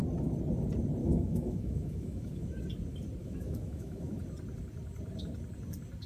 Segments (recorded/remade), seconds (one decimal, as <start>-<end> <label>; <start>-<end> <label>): 0.0-1.0 recorded; 1.0-2.6 remade; 2.6-3.2 recorded; 3.2-4.2 remade; 4.2-6.1 recorded